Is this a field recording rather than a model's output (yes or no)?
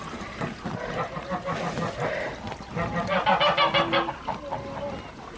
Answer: yes